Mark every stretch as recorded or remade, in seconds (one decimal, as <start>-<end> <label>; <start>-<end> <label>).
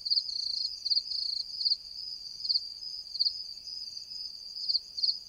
0.0-5.3 recorded